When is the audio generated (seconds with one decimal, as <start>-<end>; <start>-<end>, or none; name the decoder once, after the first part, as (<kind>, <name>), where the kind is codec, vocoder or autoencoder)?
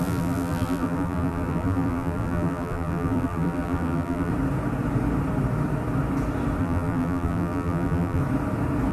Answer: 0.0-4.3 (vocoder, BigVGAN v2); 6.6-8.2